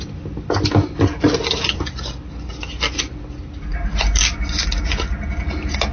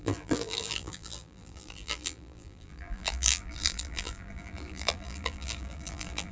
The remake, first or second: second